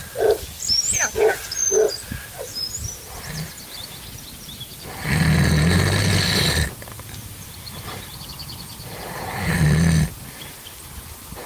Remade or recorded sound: recorded